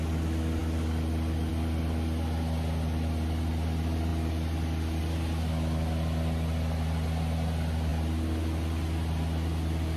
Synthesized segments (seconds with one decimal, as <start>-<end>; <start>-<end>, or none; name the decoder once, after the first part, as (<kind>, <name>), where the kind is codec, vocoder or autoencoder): none